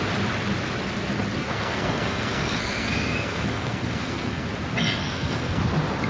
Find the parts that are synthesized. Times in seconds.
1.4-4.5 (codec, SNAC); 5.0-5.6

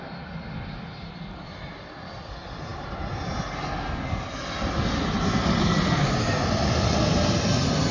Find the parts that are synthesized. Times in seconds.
none

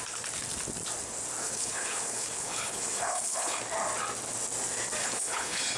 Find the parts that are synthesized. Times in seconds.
1.4-3.6 (codec, HILCodec); 5.0-5.8

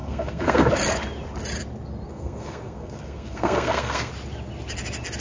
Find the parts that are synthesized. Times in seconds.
0.0-0.7 (codec, SNAC); 2.1-4.1

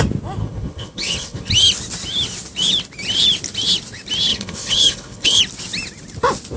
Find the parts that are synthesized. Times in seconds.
0.4-1.5 (codec, HILCodec); 4.3-5.4

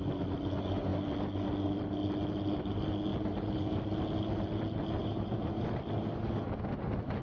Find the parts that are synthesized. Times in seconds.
3.1-3.8 (vocoder, BigVGAN v2); 5.0-5.8

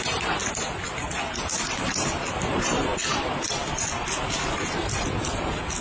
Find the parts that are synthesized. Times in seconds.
0.0-0.4 (vocoder, BigVGAN v2); 2.3-2.9

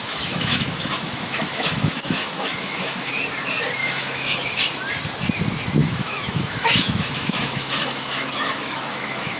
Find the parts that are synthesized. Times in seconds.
0.0-3.1 (autoencoder, DAC-VAE); 3.8-4.6; 5.8-9.4